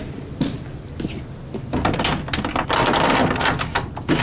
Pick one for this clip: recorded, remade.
recorded